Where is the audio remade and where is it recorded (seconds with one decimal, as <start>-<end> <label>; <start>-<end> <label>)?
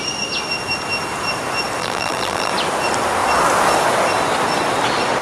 0.0-1.8 recorded; 1.8-2.5 remade; 2.5-5.2 recorded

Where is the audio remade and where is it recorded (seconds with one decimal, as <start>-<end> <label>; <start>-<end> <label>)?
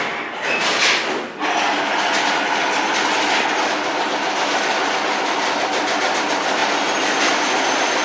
0.0-6.6 recorded; 6.6-7.3 remade; 7.3-8.0 recorded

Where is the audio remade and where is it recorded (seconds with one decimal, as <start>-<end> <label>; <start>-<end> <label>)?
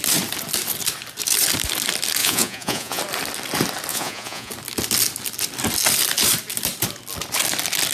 0.0-2.2 recorded; 2.2-3.0 remade; 3.0-3.9 recorded; 3.9-4.5 remade; 4.5-7.9 recorded